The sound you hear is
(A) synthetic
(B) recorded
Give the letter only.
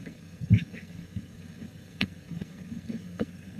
A